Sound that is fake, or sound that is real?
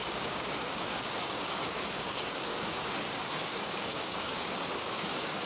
fake